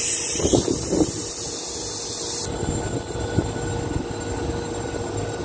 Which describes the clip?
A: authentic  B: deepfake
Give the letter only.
A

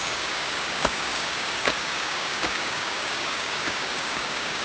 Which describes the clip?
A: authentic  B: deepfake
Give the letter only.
B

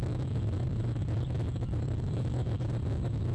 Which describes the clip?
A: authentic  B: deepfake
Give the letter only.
B